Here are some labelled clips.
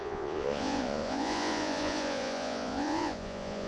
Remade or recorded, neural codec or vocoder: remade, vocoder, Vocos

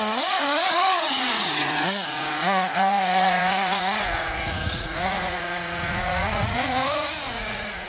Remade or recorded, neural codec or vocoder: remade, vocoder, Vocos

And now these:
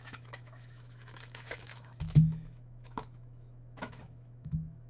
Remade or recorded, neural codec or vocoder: remade, autoencoder, DAC-VAE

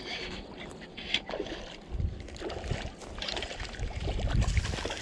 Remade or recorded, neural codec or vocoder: recorded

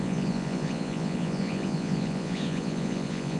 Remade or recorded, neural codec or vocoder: remade, vocoder, Vocos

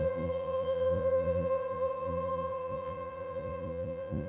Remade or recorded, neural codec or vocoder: remade, vocoder, Vocos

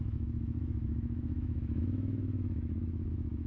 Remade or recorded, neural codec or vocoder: remade, autoencoder, DAC-VAE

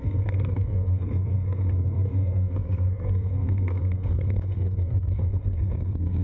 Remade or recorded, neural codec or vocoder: remade, codec, SNAC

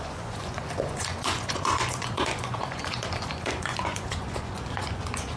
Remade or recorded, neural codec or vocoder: remade, vocoder, Vocos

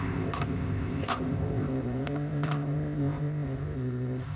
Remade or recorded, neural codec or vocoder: remade, codec, ZipCodec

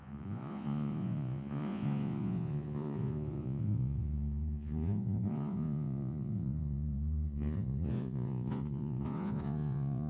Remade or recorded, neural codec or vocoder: remade, vocoder, Vocos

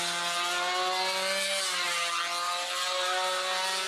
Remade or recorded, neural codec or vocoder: recorded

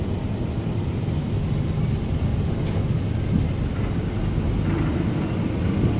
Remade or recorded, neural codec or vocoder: recorded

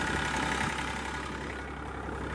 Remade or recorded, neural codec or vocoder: recorded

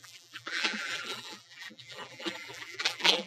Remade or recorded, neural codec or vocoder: remade, vocoder, BigVGAN v2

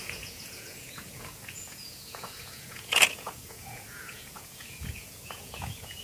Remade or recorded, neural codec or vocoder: remade, vocoder, Vocos